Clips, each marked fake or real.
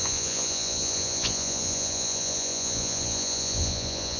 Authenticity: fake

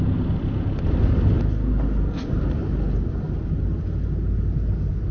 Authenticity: real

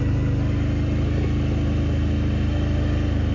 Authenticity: real